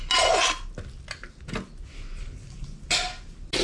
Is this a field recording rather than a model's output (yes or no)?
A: yes